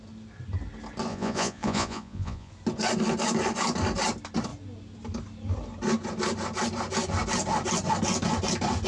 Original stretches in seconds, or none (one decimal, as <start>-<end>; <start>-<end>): 0.0-1.1; 2.5-8.9